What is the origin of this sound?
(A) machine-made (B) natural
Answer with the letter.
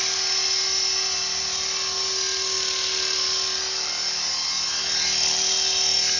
B